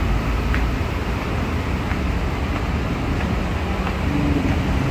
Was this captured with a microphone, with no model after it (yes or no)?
yes